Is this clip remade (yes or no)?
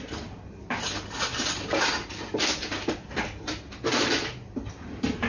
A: no